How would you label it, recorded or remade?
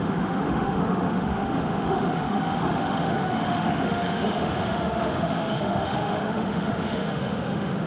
remade